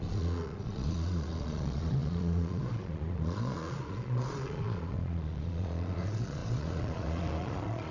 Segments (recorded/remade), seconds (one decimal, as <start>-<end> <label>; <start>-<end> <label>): 0.0-7.9 remade